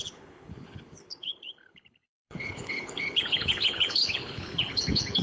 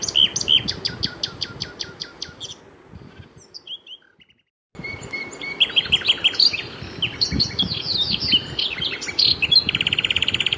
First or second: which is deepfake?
first